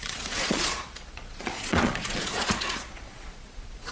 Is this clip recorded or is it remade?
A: remade